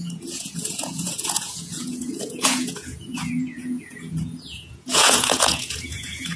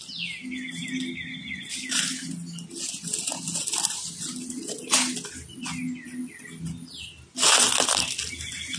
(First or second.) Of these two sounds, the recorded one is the second